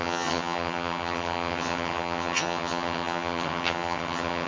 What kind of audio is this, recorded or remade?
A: remade